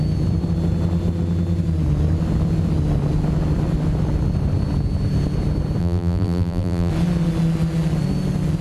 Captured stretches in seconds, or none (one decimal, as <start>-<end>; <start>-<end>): 0.0-5.8; 6.9-8.6